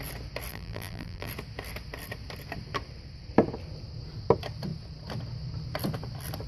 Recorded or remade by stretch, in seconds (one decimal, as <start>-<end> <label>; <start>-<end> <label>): 0.0-0.5 recorded; 0.5-1.3 remade; 1.3-6.5 recorded